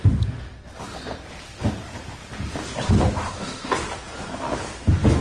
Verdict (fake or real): real